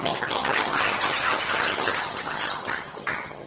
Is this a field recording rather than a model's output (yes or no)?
no